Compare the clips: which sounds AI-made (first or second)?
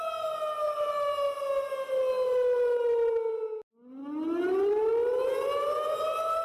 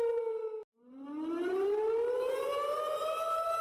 second